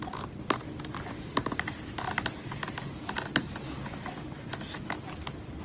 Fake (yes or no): no